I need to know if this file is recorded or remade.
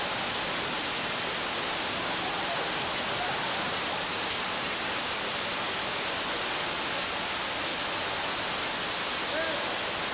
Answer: recorded